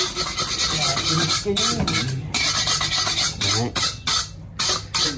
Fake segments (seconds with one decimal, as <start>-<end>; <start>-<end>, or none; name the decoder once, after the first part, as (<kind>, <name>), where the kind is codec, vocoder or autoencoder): none

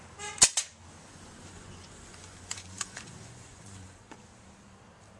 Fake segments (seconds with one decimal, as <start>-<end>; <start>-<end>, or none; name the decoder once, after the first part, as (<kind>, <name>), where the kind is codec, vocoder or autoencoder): 1.1-4.2 (vocoder, Vocos)

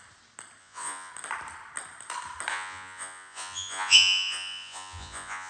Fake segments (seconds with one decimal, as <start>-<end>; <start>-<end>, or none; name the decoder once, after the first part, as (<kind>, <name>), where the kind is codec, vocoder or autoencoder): 0.6-1.1 (vocoder, Vocos); 2.5-5.5

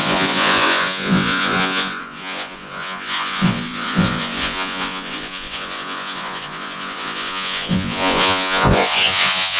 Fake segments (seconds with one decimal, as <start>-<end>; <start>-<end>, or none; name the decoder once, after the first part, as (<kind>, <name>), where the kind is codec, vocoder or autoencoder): 0.0-9.6 (vocoder, Vocos)

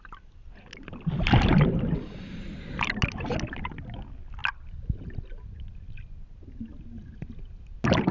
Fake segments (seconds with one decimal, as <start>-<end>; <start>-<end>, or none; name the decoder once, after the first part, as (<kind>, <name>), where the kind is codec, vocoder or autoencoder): none